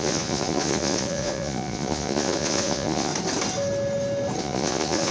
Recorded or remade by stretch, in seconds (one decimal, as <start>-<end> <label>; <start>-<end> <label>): 0.0-3.1 remade; 3.1-4.4 recorded; 4.4-5.1 remade